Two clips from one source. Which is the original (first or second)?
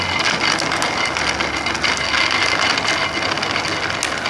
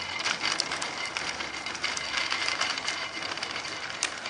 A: first